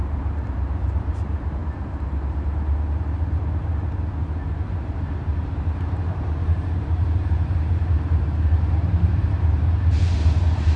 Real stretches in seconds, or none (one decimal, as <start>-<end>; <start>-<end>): 1.6-4.7